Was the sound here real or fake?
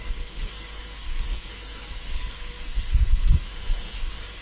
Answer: fake